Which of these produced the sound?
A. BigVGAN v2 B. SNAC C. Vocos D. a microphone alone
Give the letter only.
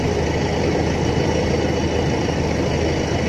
D